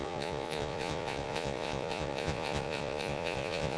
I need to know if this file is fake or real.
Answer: fake